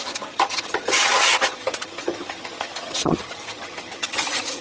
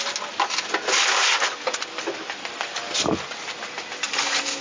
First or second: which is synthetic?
first